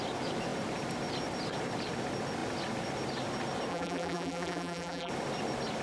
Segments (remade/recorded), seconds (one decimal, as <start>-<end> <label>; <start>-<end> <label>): 0.0-3.7 recorded; 3.7-5.1 remade; 5.1-5.8 recorded